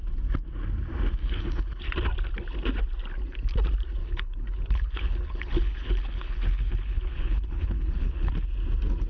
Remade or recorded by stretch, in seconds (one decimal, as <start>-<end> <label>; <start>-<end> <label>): 0.0-1.2 recorded; 1.2-1.8 remade; 1.8-4.0 recorded; 4.0-8.3 remade; 8.3-9.1 recorded